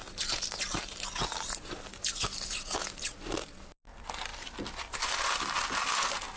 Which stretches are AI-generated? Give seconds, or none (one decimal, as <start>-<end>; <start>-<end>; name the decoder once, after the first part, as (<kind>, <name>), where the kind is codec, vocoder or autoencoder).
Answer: none